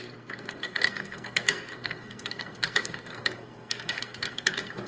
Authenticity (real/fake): fake